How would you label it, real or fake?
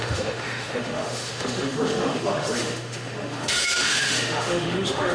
fake